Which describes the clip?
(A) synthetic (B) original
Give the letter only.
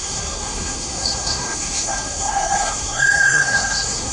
A